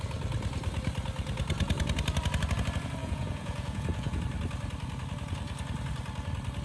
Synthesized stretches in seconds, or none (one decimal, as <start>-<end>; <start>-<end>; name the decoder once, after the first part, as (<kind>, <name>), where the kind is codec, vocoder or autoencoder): 3.0-4.2 (vocoder, Vocos)

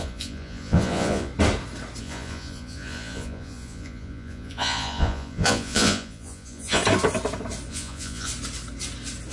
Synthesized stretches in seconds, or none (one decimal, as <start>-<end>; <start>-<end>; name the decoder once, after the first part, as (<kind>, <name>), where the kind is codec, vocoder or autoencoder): 0.0-1.3 (vocoder, Vocos); 2.0-6.8; 7.7-8.3

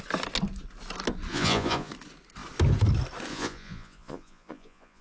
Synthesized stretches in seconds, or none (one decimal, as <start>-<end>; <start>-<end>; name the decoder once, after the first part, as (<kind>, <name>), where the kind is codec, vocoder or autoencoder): 1.3-1.9 (vocoder, Vocos); 3.3-5.0

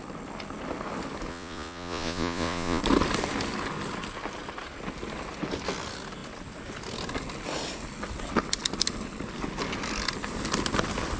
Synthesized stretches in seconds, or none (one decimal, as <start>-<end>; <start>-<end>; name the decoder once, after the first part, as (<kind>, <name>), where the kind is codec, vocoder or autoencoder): 1.3-2.8 (vocoder, Vocos)

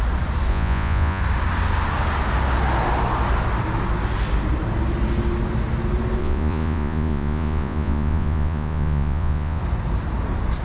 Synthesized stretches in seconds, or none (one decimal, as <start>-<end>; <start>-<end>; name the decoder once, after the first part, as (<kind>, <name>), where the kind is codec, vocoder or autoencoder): 0.5-1.2 (vocoder, Vocos); 6.2-9.6

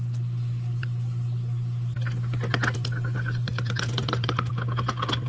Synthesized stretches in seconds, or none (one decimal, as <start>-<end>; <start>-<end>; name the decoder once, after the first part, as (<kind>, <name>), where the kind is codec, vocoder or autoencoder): none

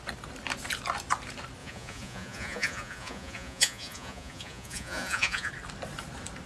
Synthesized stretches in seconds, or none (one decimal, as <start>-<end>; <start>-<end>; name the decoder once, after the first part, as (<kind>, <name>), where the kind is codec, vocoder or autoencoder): 1.6-5.5 (vocoder, Vocos)

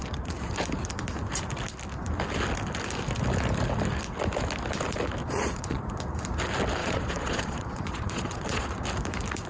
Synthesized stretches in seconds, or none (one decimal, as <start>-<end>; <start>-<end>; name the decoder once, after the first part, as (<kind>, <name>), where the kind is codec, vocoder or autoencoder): 5.2-5.9 (vocoder, Vocos); 6.8-8.7